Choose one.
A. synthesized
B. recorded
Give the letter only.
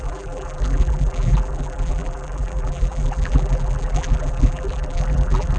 A